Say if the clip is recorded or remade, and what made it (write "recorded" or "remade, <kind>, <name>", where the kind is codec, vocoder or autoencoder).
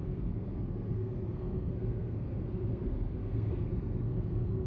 remade, codec, SNAC